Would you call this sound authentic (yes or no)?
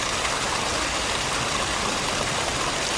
yes